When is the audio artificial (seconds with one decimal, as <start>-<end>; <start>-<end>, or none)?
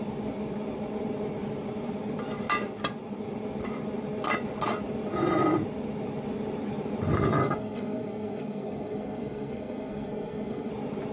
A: 7.4-10.7